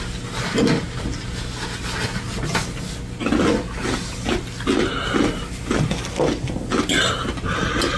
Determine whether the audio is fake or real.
real